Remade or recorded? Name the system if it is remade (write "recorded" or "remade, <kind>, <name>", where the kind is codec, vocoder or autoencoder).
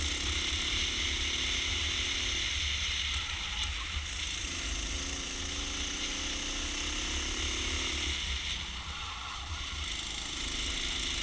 recorded